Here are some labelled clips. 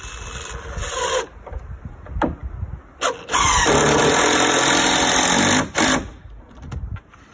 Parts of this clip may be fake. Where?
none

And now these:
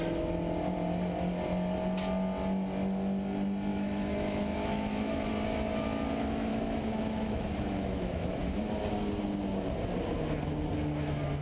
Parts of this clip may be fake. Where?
3.7-5.3 (autoencoder, DAC-VAE); 6.5-8.7

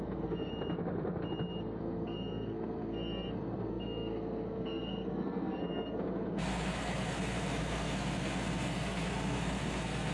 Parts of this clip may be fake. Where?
0.0-0.5 (codec, SNAC); 1.8-10.1